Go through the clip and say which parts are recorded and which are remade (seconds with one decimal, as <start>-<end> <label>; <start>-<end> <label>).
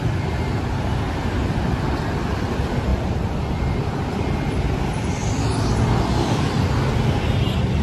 0.0-7.8 recorded